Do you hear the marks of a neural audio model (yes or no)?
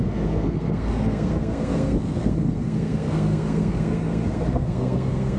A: yes